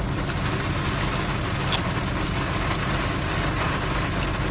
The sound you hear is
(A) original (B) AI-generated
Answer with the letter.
A